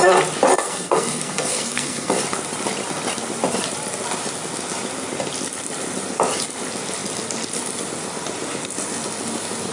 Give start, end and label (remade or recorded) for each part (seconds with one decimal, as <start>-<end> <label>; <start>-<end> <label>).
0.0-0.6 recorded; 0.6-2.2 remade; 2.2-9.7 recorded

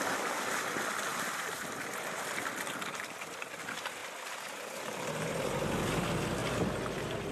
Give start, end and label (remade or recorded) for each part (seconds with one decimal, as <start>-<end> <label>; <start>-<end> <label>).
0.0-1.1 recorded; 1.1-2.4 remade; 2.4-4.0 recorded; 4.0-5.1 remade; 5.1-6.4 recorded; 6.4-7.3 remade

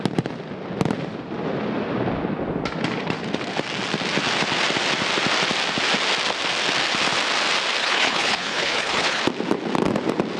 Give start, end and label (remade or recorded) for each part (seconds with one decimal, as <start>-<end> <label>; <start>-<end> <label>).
0.0-7.8 recorded; 7.8-9.2 remade; 9.2-10.4 recorded

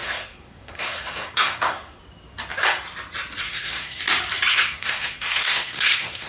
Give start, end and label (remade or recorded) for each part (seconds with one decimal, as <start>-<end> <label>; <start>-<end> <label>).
0.0-2.0 remade; 2.0-3.4 recorded; 3.4-4.0 remade; 4.0-4.5 recorded; 4.5-6.3 remade

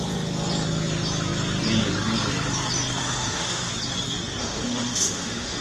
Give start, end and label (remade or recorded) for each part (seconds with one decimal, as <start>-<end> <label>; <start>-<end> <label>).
0.0-3.0 recorded; 3.0-3.7 remade; 3.7-4.4 recorded; 4.4-5.6 remade

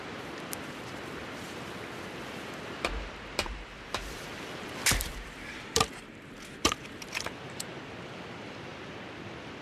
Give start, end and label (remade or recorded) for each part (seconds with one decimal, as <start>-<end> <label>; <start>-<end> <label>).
0.0-8.7 remade; 8.7-9.6 recorded